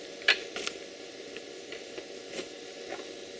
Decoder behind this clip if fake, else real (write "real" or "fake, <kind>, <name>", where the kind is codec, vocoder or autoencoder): real